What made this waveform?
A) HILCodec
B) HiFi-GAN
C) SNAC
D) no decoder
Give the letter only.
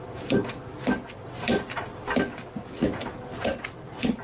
D